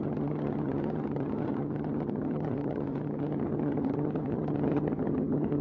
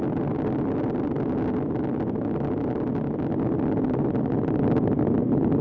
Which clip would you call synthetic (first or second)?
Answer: first